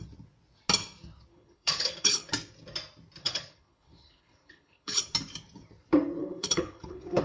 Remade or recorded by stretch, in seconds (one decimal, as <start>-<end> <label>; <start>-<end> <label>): 0.0-1.3 recorded; 1.3-2.3 remade; 2.3-3.2 recorded; 3.2-5.0 remade; 5.0-6.2 recorded; 6.2-7.2 remade